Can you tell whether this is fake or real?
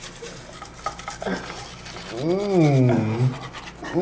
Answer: real